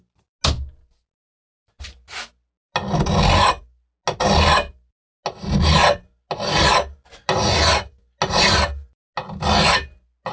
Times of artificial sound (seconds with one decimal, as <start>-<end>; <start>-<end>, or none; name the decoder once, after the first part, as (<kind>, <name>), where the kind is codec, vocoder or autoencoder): none